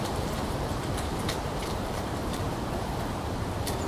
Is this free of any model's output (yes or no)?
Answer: no